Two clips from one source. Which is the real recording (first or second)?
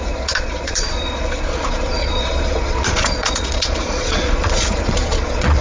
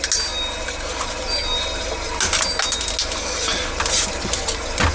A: second